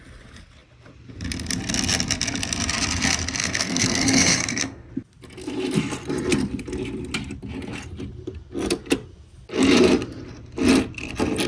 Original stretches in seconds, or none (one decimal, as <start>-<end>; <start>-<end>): 0.0-3.4; 4.9-11.5